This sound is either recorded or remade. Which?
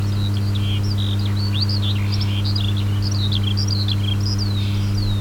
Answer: recorded